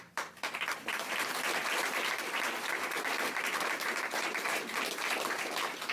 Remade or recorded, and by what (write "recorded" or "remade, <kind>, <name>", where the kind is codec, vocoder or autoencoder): remade, vocoder, BigVGAN v2